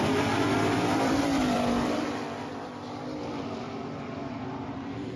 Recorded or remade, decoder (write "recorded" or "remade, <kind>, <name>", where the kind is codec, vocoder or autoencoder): remade, vocoder, BigVGAN v2